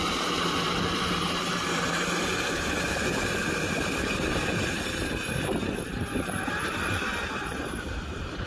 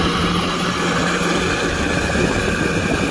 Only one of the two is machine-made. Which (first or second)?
first